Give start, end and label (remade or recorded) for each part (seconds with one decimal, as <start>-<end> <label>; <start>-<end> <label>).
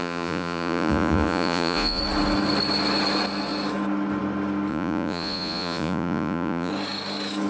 0.0-2.0 remade; 2.0-4.7 recorded; 4.7-6.7 remade; 6.7-7.5 recorded